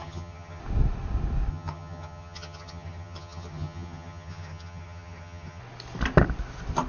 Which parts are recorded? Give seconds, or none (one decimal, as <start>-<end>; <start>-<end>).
0.6-1.5; 5.6-6.9